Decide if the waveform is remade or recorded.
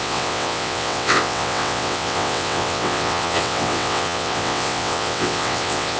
remade